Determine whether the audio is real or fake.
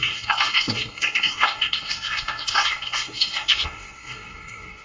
fake